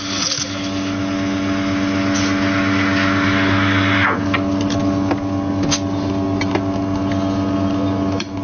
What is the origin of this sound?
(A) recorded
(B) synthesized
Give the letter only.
A